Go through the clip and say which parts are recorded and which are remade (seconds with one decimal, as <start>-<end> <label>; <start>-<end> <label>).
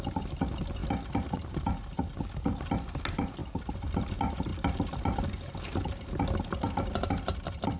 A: 0.0-7.8 recorded